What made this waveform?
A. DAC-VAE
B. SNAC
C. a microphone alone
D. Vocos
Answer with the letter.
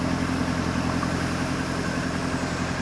C